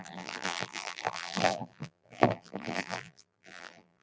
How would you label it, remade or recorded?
remade